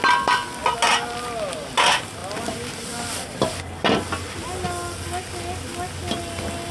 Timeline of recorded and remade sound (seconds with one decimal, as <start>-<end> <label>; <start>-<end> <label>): 0.0-6.7 recorded